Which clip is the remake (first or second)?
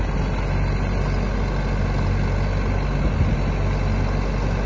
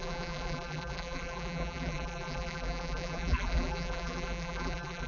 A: second